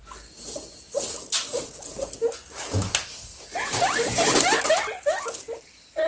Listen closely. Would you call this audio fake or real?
real